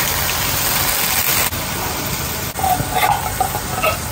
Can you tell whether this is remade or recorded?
recorded